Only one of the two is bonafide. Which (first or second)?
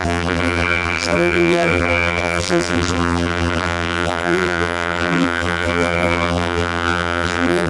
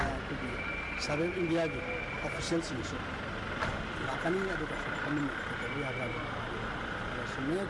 second